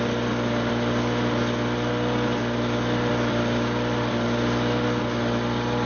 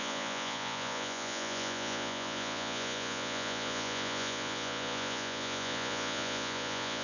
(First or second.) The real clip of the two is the first